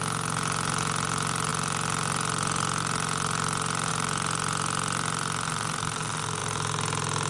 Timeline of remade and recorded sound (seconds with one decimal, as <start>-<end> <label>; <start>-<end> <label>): 0.0-7.3 recorded